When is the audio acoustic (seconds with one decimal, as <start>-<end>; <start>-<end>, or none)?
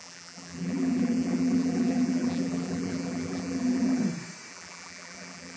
4.0-4.5